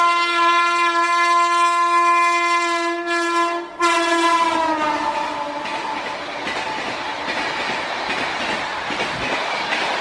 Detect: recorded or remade recorded